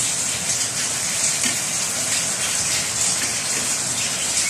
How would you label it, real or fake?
real